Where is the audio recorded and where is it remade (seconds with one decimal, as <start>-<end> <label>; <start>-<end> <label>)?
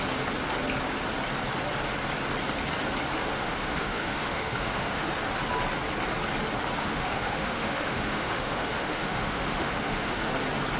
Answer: 0.0-3.2 recorded; 3.2-5.1 remade; 5.1-6.8 recorded; 6.8-10.3 remade; 10.3-10.8 recorded